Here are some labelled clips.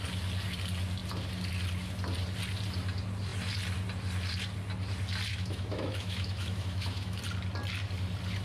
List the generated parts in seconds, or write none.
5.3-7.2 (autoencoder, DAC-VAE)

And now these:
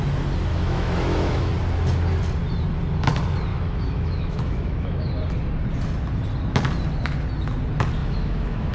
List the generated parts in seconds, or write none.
0.5-1.5 (autoencoder, DAC-VAE); 3.5-5.2; 8.0-8.7

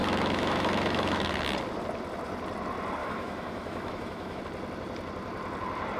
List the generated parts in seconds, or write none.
0.0-1.4 (autoencoder, DAC-VAE); 3.0-4.4

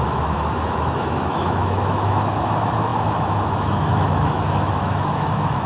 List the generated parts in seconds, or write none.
0.0-5.7 (autoencoder, DAC-VAE)

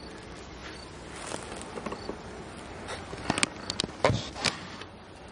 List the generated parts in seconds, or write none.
none